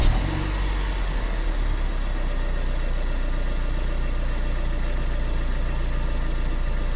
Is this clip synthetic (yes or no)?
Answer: no